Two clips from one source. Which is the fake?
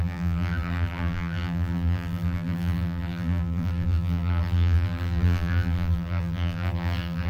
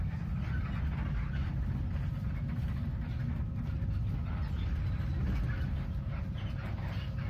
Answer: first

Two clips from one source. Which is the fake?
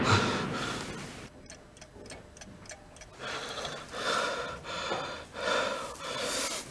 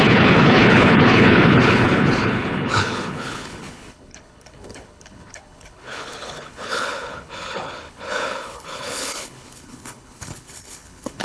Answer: second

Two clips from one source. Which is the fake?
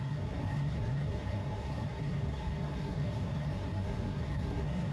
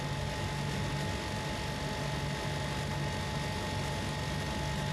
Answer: first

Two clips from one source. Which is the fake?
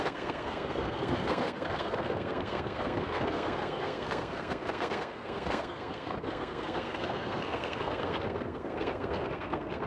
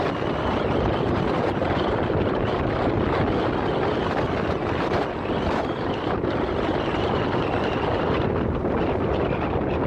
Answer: first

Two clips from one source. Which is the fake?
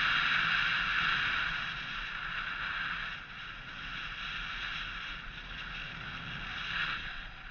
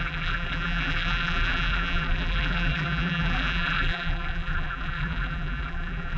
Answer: second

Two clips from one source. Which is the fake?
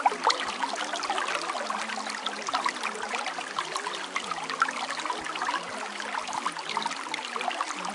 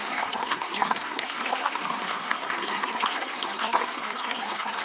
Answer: second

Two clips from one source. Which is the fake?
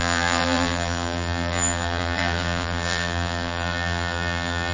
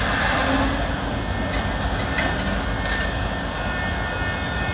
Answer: first